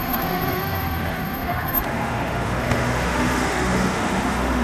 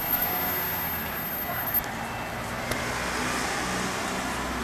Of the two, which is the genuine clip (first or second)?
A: second